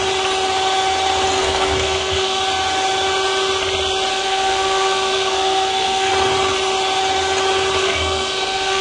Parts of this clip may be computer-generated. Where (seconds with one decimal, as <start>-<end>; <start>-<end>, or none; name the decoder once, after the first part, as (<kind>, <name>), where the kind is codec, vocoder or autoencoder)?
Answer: 1.4-2.4 (codec, SNAC); 4.1-6.1; 7.8-8.8